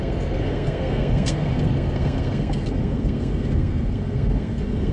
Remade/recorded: remade